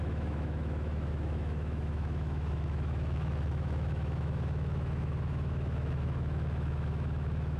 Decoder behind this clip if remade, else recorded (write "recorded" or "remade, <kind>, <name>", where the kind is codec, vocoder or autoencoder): remade, autoencoder, DAC-VAE